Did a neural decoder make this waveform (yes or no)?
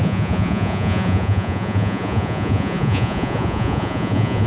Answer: yes